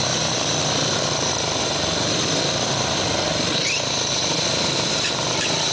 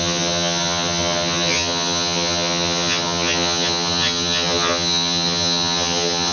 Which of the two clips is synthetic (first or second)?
second